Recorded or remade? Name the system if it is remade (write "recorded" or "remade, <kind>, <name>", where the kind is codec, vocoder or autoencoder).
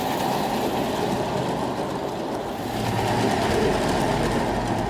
recorded